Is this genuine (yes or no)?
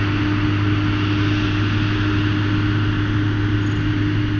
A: yes